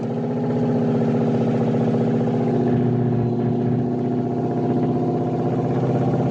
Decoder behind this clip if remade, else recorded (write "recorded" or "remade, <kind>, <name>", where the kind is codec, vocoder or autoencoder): recorded